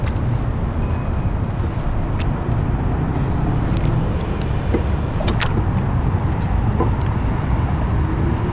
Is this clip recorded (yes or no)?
yes